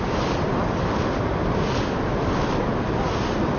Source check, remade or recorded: recorded